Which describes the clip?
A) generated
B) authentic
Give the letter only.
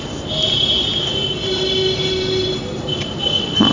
B